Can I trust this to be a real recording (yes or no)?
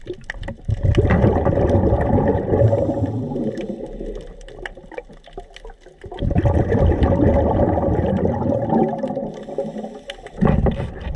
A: yes